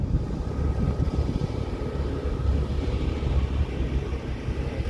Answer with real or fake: fake